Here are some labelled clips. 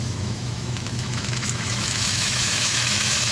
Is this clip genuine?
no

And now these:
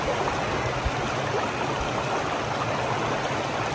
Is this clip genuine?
yes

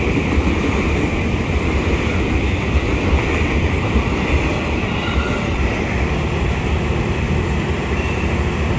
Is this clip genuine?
no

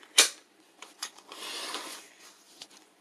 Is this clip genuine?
no